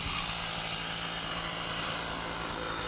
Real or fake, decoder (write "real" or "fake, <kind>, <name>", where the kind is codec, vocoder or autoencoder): real